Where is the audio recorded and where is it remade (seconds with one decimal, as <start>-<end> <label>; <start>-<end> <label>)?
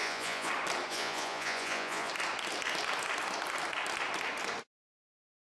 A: 0.0-0.5 remade; 0.5-0.9 recorded; 0.9-2.1 remade; 2.1-5.4 recorded